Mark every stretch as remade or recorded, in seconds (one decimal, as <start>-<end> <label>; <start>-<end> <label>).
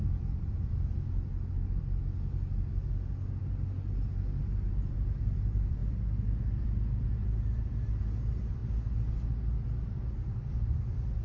0.0-0.7 remade; 0.7-4.7 recorded; 4.7-8.6 remade; 8.6-10.5 recorded; 10.5-11.2 remade